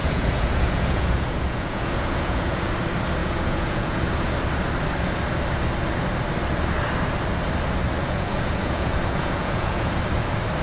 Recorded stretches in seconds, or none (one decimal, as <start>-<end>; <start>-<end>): 2.7-3.2; 4.0-8.0; 10.0-10.6